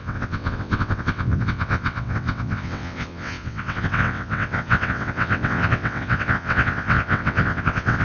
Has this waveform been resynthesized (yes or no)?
yes